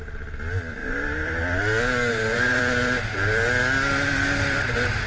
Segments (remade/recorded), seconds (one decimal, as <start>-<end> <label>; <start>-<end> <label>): 0.0-0.8 recorded; 0.8-1.4 remade; 1.4-2.1 recorded; 2.1-2.6 remade; 2.6-5.1 recorded